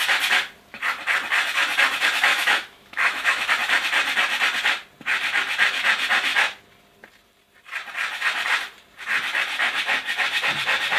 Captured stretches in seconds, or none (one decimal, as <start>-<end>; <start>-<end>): 0.0-2.3; 3.5-11.0